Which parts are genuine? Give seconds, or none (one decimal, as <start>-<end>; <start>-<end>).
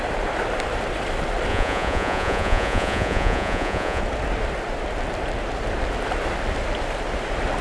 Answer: 0.0-1.5; 4.0-7.6